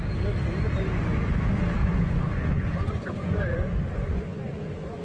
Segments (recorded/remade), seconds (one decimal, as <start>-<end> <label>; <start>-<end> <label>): 0.0-1.8 recorded; 1.8-5.0 remade